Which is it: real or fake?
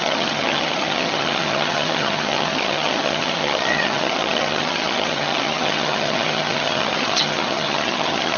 fake